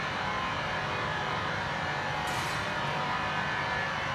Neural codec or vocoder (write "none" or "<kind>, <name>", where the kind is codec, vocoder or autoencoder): vocoder, BigVGAN v2